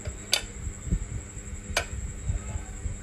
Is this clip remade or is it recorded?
recorded